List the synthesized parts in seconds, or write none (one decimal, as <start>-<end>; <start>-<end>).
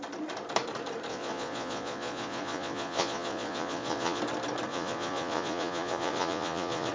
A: 1.1-4.2; 4.7-6.9